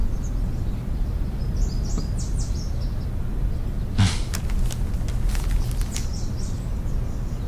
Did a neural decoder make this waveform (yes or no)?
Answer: no